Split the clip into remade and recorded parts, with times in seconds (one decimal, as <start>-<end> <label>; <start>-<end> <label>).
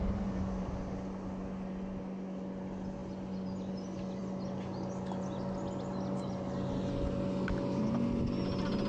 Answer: 0.0-8.9 recorded